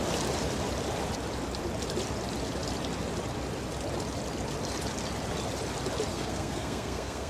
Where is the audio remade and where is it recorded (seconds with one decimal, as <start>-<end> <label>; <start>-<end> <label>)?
0.0-6.1 recorded; 6.1-7.3 remade